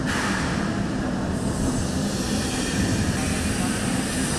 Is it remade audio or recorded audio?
remade